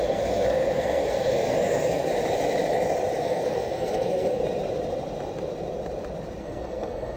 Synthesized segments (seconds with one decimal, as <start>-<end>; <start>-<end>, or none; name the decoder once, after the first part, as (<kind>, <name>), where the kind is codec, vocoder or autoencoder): 0.0-2.1 (codec, SNAC); 3.2-4.4; 6.4-7.2